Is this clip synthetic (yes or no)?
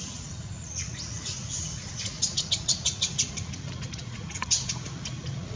yes